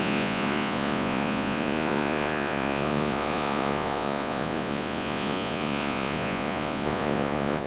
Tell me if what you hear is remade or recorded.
remade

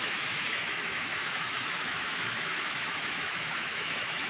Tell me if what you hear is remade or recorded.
remade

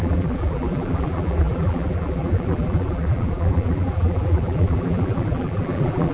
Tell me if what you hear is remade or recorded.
remade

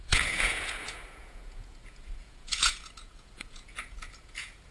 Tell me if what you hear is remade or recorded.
remade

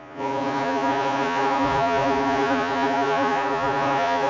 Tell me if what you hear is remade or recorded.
remade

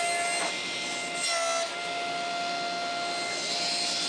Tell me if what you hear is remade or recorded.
recorded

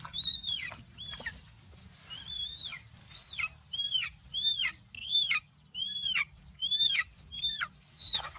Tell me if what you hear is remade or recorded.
remade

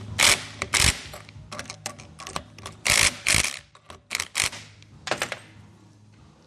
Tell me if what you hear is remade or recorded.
recorded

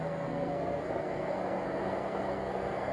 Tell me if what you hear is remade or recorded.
remade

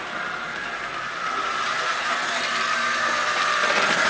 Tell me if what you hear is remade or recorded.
recorded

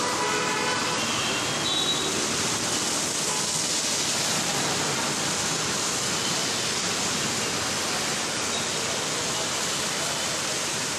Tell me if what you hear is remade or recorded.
recorded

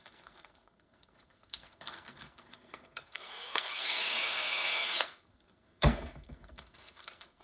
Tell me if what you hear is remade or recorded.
remade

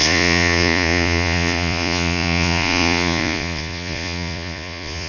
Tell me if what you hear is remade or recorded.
remade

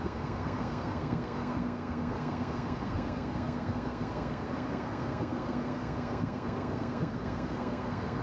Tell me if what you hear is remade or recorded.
remade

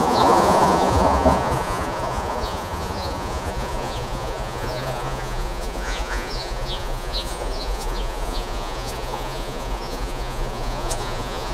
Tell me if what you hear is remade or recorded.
remade